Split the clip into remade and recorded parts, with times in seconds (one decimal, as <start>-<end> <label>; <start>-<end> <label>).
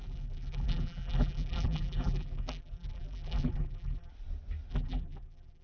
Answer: 0.0-4.1 remade; 4.1-4.7 recorded; 4.7-5.6 remade